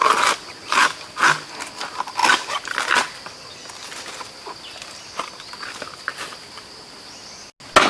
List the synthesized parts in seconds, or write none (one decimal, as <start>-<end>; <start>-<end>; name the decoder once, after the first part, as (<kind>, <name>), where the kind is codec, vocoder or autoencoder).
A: none